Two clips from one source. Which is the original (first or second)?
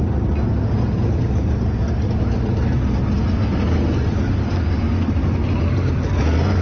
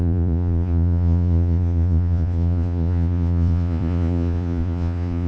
first